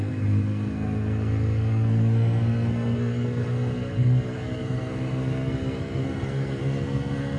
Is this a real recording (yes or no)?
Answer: no